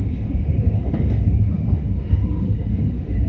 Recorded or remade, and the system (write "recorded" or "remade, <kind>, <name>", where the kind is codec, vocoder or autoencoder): remade, autoencoder, DAC-VAE